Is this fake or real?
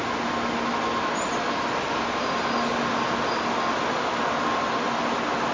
real